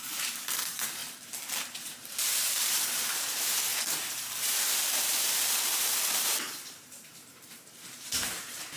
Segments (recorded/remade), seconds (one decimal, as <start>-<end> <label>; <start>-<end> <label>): 0.0-1.0 remade; 1.0-1.7 recorded; 1.7-8.8 remade